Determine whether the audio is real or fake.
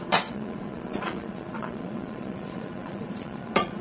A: fake